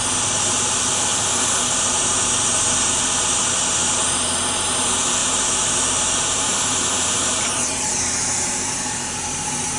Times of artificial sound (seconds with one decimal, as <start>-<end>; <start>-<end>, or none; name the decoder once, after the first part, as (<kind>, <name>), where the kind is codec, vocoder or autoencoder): 5.2-9.8 (vocoder, BigVGAN v2)